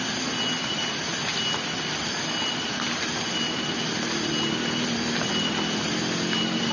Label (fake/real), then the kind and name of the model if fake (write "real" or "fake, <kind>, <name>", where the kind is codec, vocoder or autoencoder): real